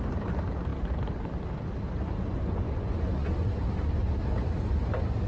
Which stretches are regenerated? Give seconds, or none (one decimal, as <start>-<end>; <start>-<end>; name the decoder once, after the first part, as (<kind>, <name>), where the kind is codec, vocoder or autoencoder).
2.3-3.6 (vocoder, Vocos)